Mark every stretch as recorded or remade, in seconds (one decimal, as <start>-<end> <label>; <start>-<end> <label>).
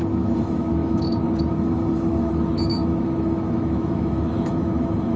0.0-5.2 remade